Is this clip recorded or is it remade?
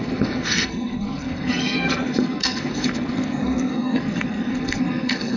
remade